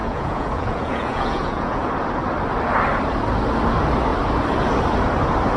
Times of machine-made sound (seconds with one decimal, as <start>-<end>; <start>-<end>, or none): 0.0-1.9